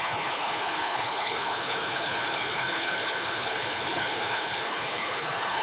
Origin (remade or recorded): remade